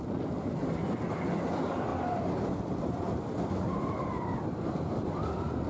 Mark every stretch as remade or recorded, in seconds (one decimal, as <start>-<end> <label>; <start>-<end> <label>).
0.0-1.9 recorded; 1.9-3.5 remade; 3.5-5.7 recorded